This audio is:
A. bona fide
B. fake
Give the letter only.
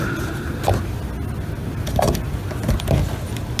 A